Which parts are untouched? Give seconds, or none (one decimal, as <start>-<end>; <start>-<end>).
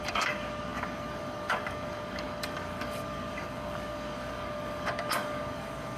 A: none